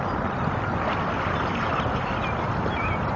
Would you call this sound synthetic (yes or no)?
no